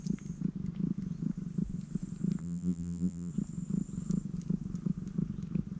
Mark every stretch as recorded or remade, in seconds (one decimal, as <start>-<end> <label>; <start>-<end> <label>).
0.0-2.4 recorded; 2.4-3.3 remade; 3.3-5.8 recorded